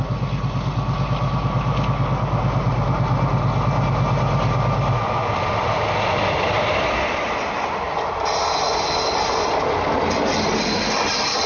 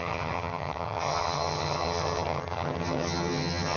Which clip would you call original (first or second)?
first